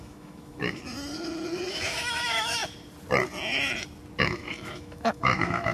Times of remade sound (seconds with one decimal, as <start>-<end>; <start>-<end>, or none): 0.0-0.8; 1.7-2.6; 4.2-5.7